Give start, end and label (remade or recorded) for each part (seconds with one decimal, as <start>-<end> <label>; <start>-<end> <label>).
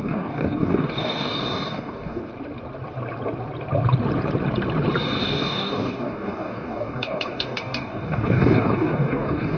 0.0-2.3 remade; 2.3-5.2 recorded; 5.2-9.6 remade